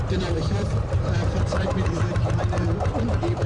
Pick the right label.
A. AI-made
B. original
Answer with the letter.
A